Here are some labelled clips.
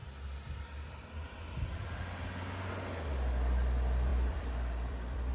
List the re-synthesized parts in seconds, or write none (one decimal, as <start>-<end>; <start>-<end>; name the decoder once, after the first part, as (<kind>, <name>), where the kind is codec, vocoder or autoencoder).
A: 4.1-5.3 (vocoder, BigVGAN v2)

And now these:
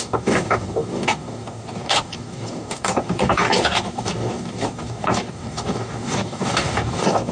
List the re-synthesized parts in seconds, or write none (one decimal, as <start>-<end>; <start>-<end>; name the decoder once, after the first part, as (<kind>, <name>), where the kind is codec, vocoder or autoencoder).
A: 0.0-7.3 (codec, DAC)

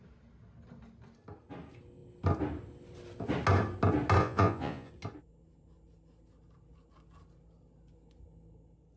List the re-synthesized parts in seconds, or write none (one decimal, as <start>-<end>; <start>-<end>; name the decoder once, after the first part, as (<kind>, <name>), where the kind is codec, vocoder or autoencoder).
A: 4.2-4.9 (vocoder, Vocos)

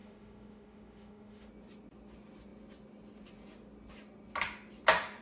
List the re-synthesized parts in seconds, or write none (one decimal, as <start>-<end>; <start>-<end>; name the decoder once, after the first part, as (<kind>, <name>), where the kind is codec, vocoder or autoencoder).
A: 0.0-1.5 (autoencoder, DAC-VAE)